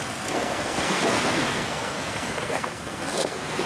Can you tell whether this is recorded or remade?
remade